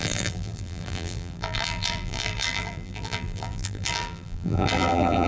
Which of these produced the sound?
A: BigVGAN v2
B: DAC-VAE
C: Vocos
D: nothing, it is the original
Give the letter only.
A